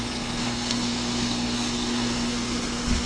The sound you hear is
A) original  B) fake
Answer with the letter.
B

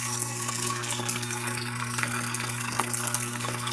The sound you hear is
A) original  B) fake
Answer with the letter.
B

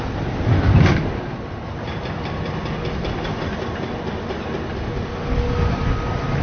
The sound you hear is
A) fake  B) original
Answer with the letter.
B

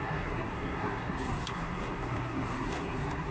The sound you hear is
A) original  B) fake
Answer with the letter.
B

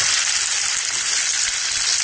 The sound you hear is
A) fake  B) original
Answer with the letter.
B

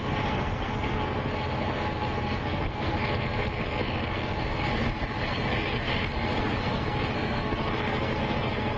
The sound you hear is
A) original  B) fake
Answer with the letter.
B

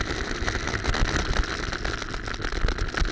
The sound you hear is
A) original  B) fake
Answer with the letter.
A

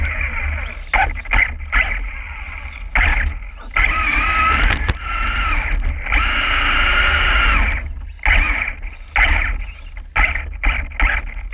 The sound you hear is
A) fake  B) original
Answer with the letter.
B